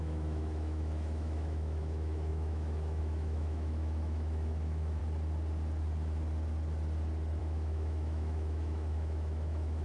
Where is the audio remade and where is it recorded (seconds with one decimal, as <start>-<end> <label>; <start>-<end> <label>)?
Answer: 0.0-5.0 remade; 5.0-7.4 recorded; 7.4-9.8 remade